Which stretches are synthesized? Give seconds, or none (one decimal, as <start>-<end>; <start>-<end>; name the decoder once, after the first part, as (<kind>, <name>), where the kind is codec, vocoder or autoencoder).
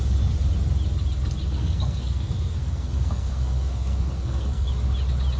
1.5-4.7 (codec, SNAC)